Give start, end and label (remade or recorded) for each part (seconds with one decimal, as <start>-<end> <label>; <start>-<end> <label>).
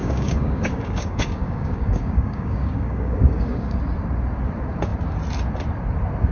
0.0-3.8 remade; 3.8-6.3 recorded